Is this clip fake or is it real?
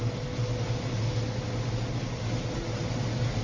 real